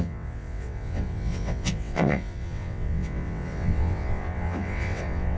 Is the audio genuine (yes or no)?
no